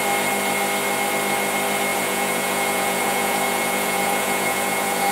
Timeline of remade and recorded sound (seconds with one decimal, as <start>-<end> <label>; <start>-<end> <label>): 0.0-1.9 recorded; 1.9-5.1 remade